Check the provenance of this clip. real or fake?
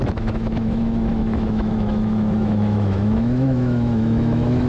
fake